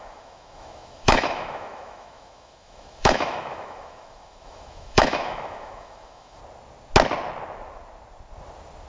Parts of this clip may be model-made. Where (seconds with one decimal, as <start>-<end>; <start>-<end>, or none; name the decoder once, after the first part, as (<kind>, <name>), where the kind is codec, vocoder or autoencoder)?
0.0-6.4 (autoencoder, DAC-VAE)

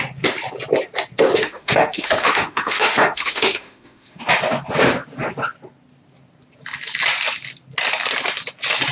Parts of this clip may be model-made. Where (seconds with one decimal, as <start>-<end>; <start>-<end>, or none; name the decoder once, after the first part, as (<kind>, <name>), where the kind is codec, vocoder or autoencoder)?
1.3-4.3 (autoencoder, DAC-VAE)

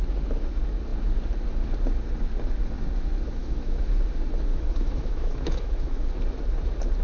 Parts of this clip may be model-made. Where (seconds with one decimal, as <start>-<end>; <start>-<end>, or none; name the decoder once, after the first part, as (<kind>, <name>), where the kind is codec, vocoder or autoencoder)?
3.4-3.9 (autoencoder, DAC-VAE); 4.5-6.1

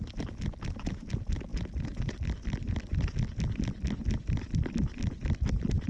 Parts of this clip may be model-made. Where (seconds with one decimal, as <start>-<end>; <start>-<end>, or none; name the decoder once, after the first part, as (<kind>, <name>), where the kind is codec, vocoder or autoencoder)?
none

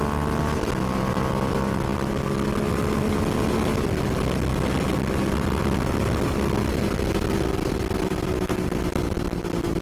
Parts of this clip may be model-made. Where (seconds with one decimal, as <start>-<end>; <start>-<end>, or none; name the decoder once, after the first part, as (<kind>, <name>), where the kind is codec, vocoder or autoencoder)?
none

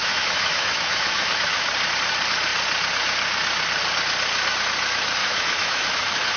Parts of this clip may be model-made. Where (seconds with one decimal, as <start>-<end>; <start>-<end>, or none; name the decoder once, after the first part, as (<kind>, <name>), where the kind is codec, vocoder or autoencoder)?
0.0-1.7 (autoencoder, DAC-VAE); 5.2-6.4

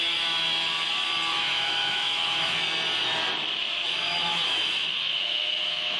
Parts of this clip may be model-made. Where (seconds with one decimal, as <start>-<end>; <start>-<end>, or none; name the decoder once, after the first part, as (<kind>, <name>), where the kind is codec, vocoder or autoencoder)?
1.3-2.6 (autoencoder, DAC-VAE); 3.8-6.0